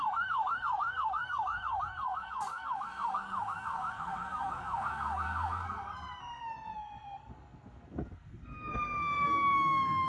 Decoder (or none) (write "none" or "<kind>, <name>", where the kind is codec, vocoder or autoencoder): codec, SNAC